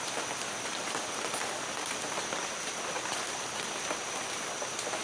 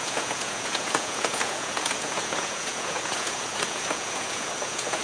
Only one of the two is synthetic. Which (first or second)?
second